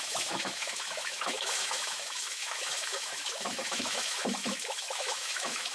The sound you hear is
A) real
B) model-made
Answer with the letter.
B